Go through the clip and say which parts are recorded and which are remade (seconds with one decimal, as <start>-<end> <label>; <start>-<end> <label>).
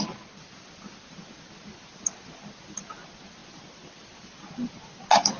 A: 0.0-5.4 recorded